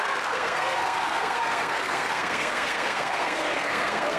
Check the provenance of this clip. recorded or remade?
remade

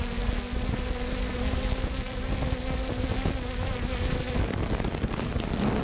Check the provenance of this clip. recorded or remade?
recorded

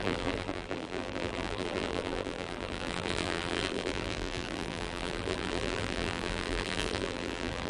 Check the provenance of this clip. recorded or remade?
remade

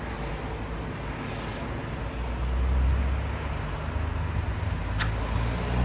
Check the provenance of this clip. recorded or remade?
recorded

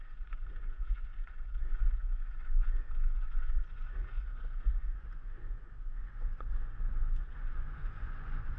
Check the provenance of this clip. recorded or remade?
remade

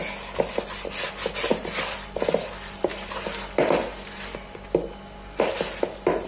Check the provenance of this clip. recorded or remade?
recorded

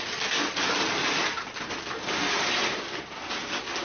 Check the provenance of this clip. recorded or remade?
recorded